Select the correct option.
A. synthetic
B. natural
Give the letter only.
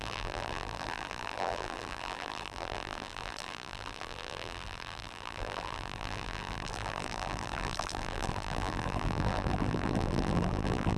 A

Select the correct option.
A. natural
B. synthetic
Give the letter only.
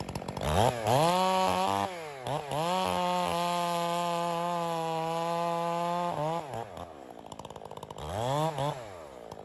A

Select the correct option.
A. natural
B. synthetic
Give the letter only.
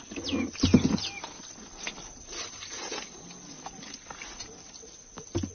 A